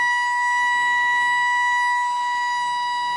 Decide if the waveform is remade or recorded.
recorded